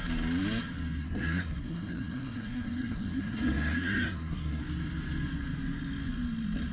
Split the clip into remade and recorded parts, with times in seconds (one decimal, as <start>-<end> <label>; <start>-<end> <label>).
0.0-1.0 recorded; 1.0-4.6 remade; 4.6-6.7 recorded

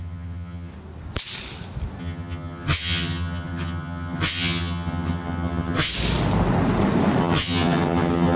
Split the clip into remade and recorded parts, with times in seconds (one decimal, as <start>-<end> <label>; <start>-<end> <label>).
0.0-0.7 remade; 0.7-2.0 recorded; 2.0-5.9 remade; 5.9-7.2 recorded; 7.2-8.4 remade

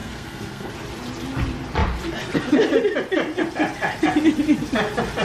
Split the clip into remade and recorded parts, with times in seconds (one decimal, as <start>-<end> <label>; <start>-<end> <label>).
0.0-0.7 remade; 0.7-5.2 recorded

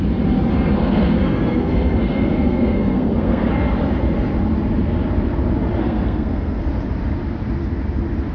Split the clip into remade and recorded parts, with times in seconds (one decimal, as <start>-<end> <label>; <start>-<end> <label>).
0.0-0.8 recorded; 0.8-3.5 remade; 3.5-5.8 recorded; 5.8-6.6 remade; 6.6-8.3 recorded

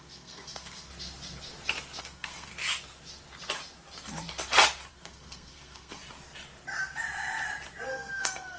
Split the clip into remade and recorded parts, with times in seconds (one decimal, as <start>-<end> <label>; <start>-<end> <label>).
0.0-0.9 remade; 0.9-2.0 recorded; 2.0-2.5 remade; 2.5-4.9 recorded; 4.9-6.0 remade; 6.0-7.9 recorded; 7.9-8.6 remade

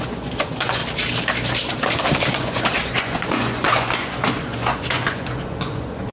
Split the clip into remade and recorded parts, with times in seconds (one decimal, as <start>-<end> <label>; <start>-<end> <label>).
0.0-0.8 remade; 0.8-2.3 recorded; 2.3-6.1 remade